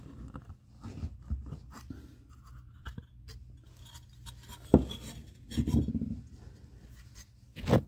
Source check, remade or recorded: recorded